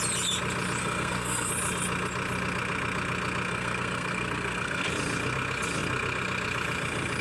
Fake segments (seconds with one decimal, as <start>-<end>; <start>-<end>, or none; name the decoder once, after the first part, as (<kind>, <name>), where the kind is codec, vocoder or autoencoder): 0.8-1.5 (codec, SNAC); 3.5-4.9